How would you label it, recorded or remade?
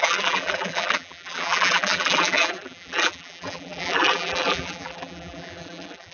remade